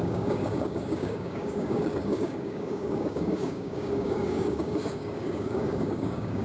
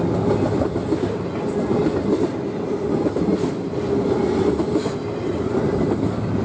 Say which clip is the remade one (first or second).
first